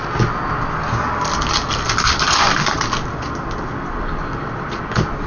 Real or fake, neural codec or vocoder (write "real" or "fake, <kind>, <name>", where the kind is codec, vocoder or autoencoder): real